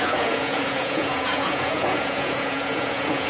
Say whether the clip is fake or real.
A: fake